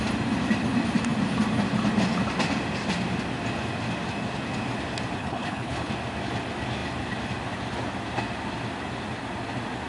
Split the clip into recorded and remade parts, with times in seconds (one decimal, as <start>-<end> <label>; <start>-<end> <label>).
0.0-5.2 recorded; 5.2-5.9 remade; 5.9-9.9 recorded